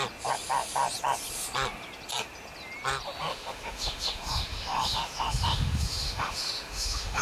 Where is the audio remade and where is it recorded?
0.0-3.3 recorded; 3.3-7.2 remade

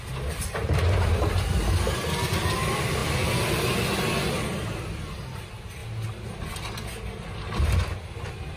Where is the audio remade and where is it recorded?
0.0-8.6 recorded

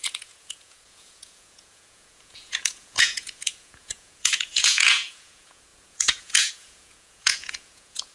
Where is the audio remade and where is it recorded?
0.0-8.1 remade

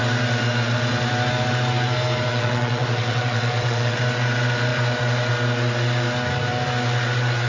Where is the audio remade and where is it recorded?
0.0-2.3 recorded; 2.3-4.0 remade; 4.0-7.5 recorded